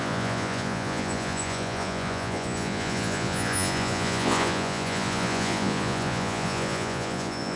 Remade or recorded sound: remade